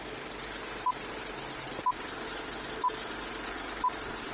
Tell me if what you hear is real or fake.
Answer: real